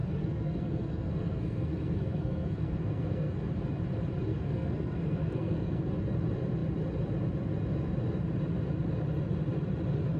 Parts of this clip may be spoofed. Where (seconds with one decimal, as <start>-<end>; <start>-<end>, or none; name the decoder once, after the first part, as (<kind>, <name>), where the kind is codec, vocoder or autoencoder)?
0.0-3.5 (codec, SNAC); 4.3-5.9